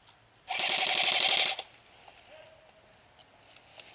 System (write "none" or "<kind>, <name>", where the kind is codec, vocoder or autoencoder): none